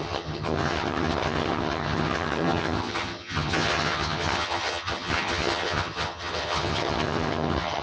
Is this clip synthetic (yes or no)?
yes